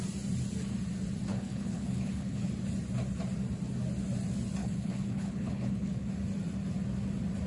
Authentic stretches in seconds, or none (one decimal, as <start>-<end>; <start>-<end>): 0.0-1.3; 2.5-4.6; 6.1-7.5